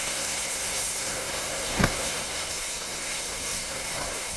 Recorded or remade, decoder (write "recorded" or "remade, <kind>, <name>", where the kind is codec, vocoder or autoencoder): remade, codec, SNAC